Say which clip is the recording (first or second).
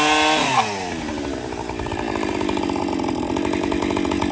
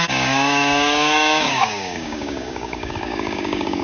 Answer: first